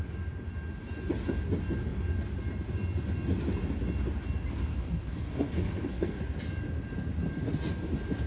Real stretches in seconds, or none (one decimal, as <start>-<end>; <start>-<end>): 0.0-4.7; 6.4-8.3